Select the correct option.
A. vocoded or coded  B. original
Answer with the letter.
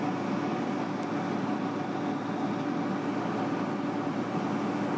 B